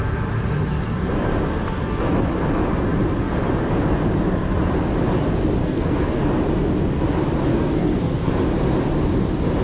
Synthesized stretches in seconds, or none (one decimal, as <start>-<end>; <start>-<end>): 5.6-6.2; 7.5-8.3